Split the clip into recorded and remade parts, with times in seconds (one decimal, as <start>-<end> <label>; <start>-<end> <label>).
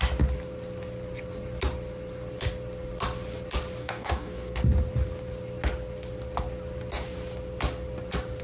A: 0.0-3.8 recorded; 3.8-4.6 remade; 4.6-8.4 recorded